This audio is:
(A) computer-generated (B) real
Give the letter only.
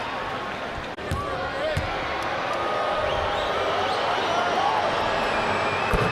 B